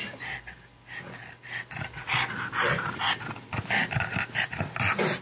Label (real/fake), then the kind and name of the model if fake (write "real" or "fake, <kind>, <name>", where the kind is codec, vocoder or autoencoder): real